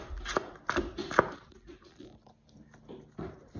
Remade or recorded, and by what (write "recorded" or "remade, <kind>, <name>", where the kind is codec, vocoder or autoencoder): recorded